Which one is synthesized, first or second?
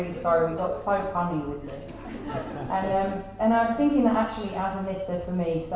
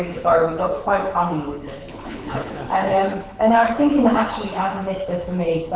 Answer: second